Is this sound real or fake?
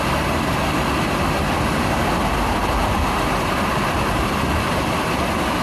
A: real